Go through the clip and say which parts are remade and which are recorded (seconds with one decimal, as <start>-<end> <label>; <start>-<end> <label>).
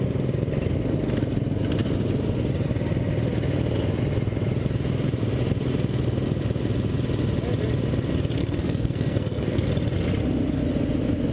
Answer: 0.0-8.4 recorded; 8.4-9.7 remade; 9.7-11.3 recorded